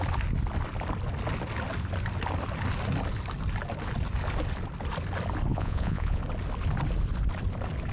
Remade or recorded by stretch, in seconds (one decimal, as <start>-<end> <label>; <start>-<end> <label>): 0.0-5.5 recorded; 5.5-6.2 remade; 6.2-7.9 recorded